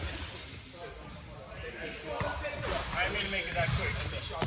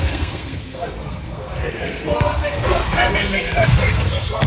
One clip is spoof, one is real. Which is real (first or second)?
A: first